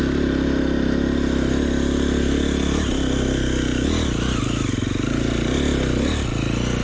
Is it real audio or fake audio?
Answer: real